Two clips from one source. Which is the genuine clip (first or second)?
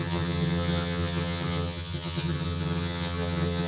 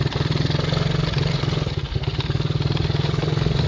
second